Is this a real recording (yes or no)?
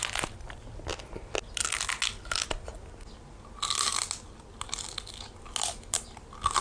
yes